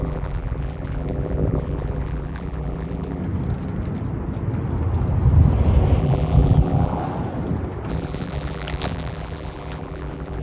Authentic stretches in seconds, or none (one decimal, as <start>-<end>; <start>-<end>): 3.2-6.0; 7.0-7.9